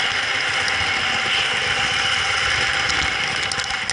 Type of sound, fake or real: real